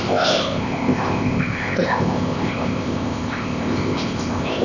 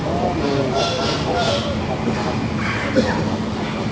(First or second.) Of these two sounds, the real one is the second